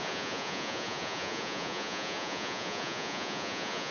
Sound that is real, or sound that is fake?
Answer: fake